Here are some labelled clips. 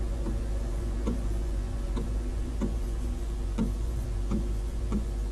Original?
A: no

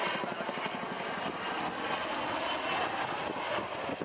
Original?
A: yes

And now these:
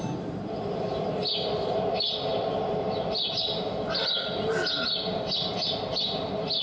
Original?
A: yes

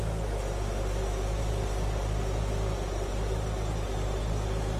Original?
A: yes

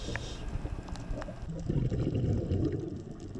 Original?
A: yes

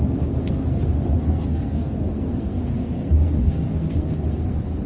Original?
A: no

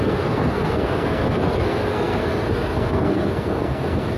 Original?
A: no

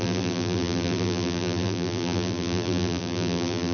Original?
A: no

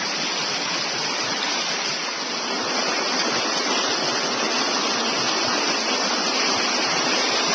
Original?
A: yes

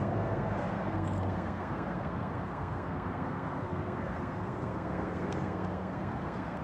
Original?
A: no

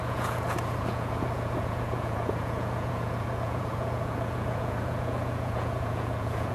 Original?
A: no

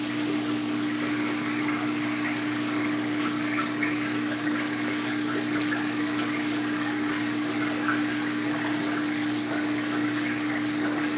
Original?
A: no